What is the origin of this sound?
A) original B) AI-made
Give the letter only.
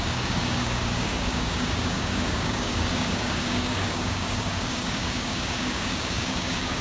B